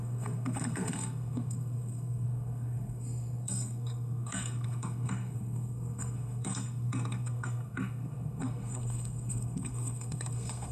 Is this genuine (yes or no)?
no